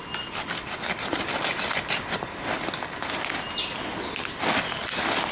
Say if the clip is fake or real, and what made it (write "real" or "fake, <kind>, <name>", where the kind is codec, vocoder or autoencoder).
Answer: real